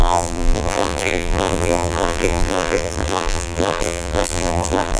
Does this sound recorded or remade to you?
remade